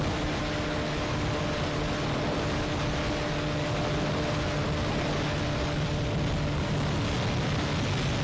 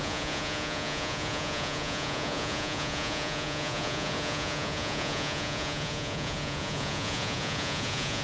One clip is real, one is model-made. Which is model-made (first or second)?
second